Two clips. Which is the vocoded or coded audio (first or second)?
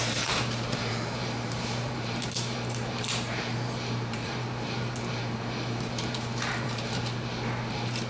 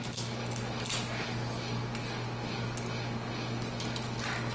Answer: first